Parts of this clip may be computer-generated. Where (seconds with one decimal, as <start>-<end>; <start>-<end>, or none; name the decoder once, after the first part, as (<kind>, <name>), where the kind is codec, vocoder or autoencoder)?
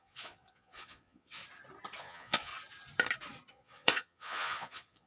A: 0.0-1.4 (vocoder, Vocos); 2.0-2.5; 3.5-5.1